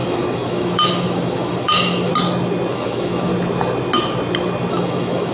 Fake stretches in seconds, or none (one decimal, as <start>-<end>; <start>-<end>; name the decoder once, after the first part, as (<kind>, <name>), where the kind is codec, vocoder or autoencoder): 0.0-2.1 (autoencoder, DAC-VAE); 2.7-3.3; 4.7-5.3